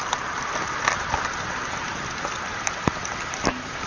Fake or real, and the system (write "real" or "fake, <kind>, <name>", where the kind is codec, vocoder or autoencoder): real